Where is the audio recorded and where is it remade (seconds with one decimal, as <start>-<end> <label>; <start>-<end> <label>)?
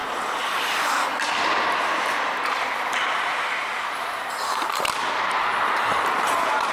0.0-1.1 recorded; 1.1-4.8 remade; 4.8-5.9 recorded; 5.9-6.7 remade